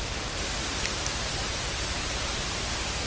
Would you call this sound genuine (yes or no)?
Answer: no